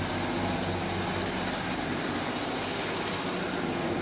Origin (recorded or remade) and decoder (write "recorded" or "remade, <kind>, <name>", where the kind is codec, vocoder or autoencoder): recorded